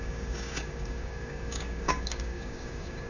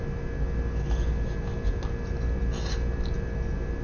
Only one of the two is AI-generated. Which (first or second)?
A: first